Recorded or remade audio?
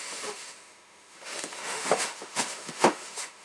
remade